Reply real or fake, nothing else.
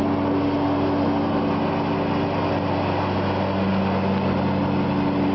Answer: real